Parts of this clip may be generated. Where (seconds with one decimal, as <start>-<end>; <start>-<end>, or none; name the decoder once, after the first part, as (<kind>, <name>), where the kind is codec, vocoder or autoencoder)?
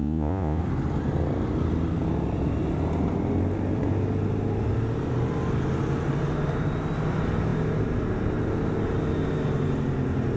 0.0-0.6 (vocoder, Vocos)